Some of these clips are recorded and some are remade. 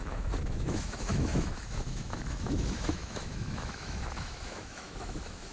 remade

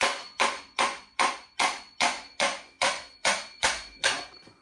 remade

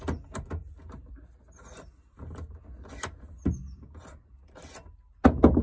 recorded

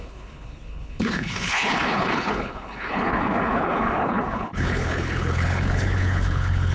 remade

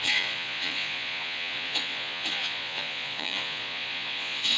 remade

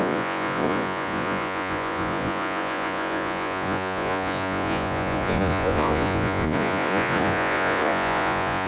remade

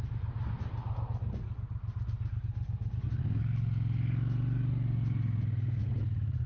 recorded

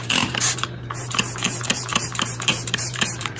remade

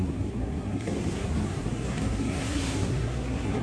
remade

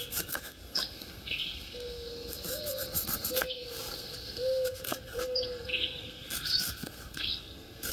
remade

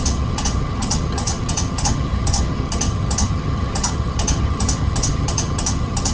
remade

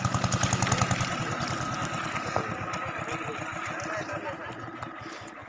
recorded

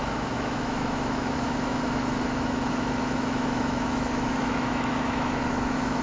remade